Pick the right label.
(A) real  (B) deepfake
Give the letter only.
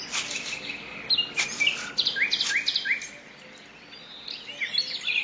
A